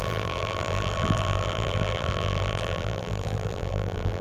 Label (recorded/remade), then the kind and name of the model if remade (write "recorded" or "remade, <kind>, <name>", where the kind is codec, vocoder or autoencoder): remade, vocoder, BigVGAN v2